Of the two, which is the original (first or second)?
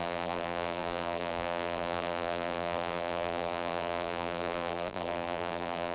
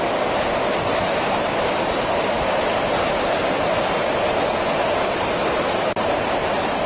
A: second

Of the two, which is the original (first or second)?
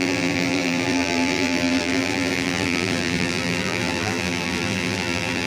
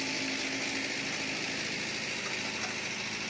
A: second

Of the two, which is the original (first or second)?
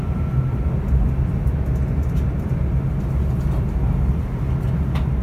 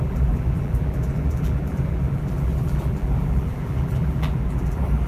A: first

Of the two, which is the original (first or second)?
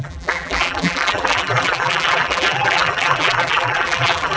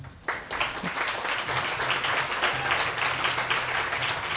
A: second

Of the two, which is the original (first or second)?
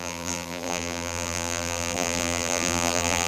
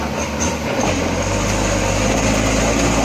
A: second